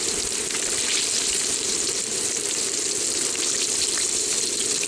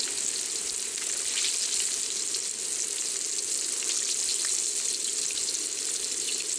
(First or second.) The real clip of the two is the second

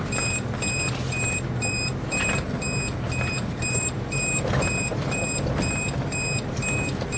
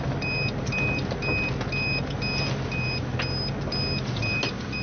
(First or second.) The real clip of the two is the second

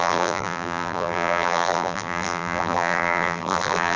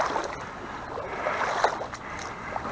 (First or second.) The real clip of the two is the second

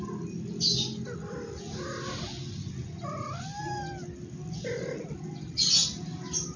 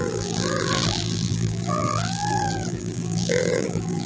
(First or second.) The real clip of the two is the first